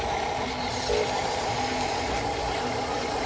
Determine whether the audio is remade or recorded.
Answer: recorded